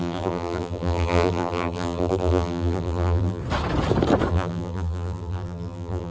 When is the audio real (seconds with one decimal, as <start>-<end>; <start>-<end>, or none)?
3.4-4.3